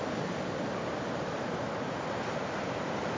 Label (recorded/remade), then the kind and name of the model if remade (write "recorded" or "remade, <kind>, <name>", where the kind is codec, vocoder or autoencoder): recorded